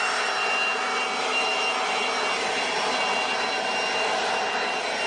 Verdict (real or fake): real